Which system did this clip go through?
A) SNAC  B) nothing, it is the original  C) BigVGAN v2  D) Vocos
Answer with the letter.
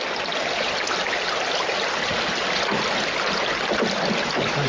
B